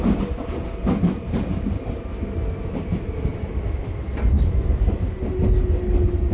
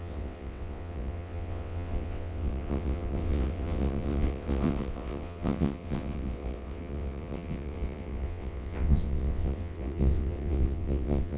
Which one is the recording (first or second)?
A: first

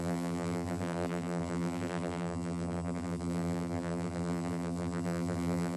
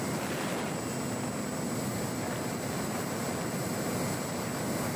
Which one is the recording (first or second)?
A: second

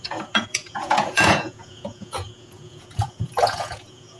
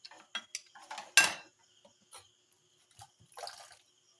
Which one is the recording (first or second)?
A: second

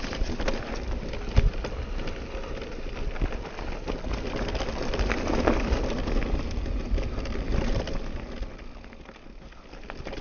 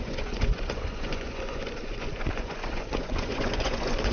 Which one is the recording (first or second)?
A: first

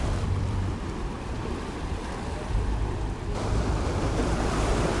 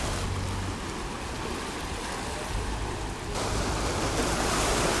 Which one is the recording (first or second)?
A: second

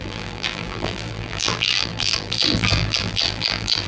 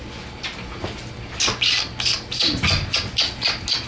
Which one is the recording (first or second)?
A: second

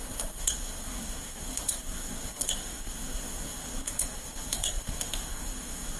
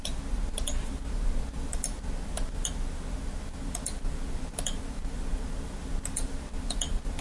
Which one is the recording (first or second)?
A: second